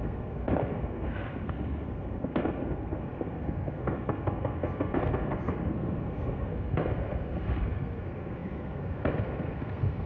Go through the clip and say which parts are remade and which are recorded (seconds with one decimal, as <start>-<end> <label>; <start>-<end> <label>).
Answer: 0.0-10.1 remade

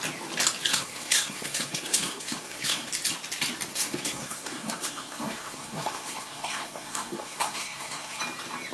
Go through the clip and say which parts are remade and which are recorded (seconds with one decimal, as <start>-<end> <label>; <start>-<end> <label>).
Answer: 0.0-0.7 recorded; 0.7-2.9 remade; 2.9-3.7 recorded; 3.7-8.2 remade; 8.2-8.7 recorded

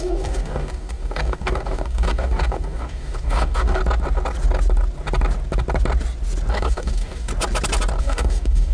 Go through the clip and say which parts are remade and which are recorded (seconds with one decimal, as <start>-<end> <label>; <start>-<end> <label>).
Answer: 0.0-3.8 remade; 3.8-6.5 recorded; 6.5-7.3 remade; 7.3-8.0 recorded; 8.0-8.7 remade

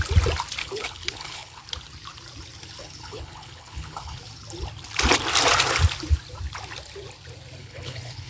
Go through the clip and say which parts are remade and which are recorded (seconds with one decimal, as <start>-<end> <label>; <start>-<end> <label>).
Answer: 0.0-0.6 recorded; 0.6-1.6 remade; 1.6-2.8 recorded; 2.8-4.2 remade; 4.2-7.6 recorded; 7.6-8.3 remade